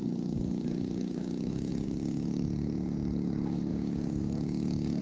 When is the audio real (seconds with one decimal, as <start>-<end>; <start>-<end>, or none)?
none